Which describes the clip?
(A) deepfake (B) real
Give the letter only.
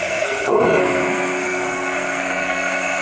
A